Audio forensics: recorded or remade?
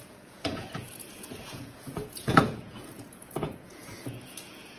remade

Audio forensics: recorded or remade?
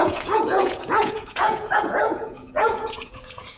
remade